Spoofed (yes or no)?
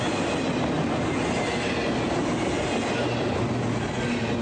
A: no